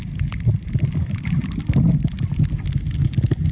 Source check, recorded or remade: recorded